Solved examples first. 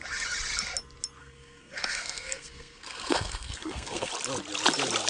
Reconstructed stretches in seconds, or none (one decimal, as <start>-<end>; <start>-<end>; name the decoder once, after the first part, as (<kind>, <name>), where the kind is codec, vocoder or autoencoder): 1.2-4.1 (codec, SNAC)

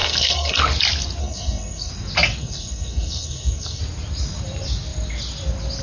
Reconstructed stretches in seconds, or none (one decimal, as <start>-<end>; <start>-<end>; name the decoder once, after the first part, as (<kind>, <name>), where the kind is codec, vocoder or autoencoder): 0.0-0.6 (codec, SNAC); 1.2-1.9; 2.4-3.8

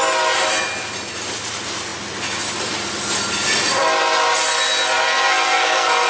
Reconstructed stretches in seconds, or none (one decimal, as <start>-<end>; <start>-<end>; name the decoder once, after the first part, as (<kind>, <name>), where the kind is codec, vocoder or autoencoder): 5.0-6.1 (codec, SNAC)